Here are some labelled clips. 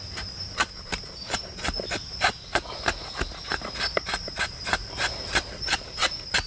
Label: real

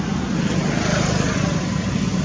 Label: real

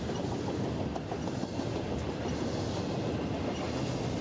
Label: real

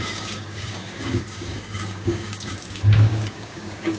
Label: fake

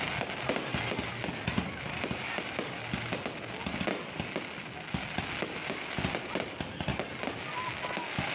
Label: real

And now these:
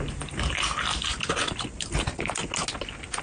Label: real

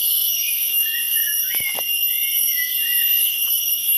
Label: fake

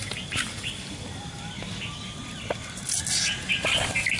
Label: real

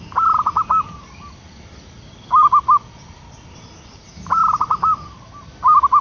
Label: real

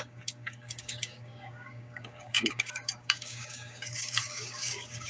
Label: fake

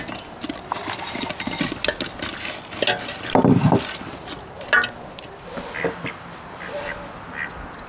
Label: real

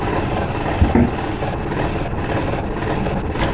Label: real